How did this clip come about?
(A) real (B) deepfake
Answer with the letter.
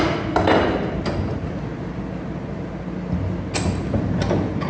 A